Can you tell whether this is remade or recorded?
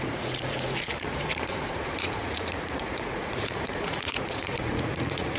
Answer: remade